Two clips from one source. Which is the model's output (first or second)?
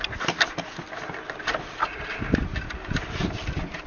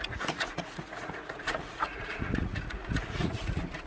second